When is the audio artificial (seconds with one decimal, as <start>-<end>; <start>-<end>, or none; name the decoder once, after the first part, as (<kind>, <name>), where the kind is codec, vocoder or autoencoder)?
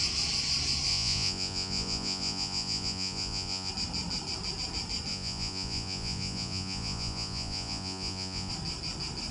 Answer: 0.9-3.7 (vocoder, Vocos); 5.1-8.5